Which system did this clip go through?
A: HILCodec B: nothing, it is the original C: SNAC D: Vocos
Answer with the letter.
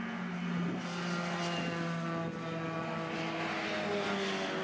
B